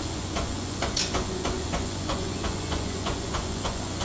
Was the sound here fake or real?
fake